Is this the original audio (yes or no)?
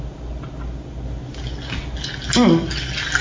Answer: yes